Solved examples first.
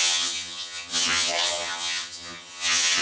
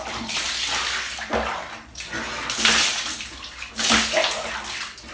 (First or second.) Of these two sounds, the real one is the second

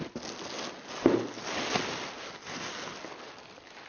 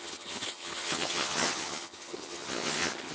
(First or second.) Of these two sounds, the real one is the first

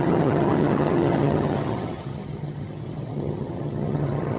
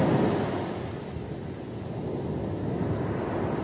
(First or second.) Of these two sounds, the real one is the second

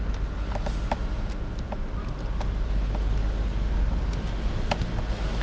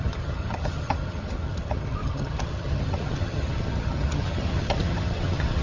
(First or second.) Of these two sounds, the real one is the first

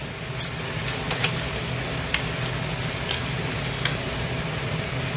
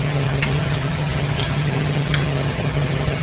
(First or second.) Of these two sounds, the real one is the first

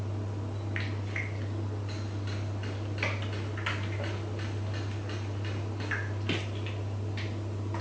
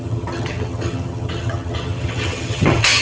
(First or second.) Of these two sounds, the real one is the first